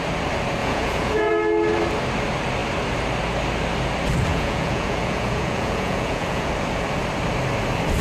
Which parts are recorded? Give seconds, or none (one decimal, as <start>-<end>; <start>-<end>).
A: 0.0-0.6; 1.3-4.3; 6.5-8.0

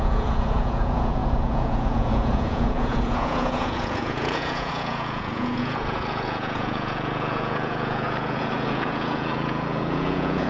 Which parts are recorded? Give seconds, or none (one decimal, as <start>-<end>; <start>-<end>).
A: none

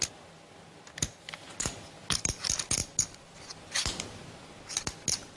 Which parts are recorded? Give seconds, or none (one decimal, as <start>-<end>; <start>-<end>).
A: 0.0-5.4